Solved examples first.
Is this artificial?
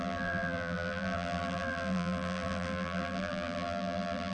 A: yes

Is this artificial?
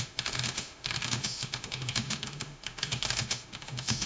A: yes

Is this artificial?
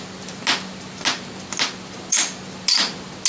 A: no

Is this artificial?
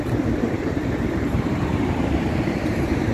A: yes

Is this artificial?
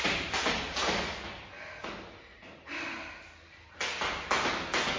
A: no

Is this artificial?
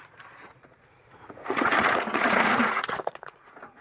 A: yes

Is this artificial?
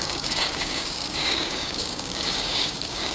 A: yes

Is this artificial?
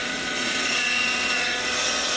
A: yes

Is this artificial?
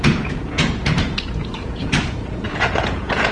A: yes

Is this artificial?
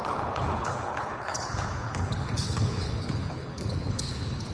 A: yes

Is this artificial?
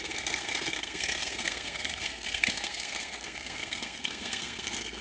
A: yes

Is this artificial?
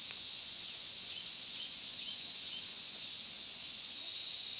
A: yes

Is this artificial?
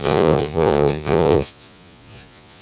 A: yes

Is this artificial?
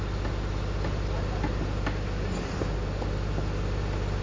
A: no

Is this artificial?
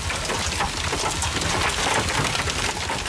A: no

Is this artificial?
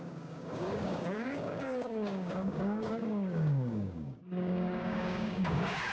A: yes